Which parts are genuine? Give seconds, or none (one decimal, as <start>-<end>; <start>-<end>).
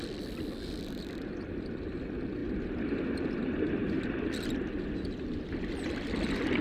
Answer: 0.0-6.6